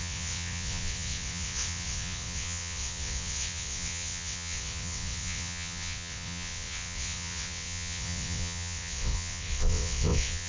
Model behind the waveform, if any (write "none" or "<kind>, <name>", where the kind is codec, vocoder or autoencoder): vocoder, WaveNeXt